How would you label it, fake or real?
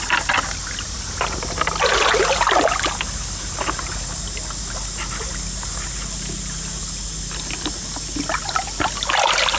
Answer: real